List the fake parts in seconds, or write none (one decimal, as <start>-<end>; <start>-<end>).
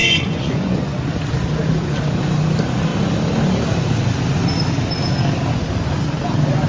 0.0-1.0